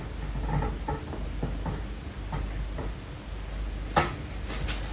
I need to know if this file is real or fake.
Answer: real